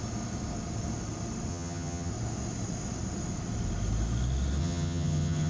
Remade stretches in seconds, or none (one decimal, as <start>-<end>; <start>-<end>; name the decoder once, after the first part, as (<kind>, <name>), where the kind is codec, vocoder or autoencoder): 1.5-2.1 (vocoder, HiFi-GAN); 4.6-5.5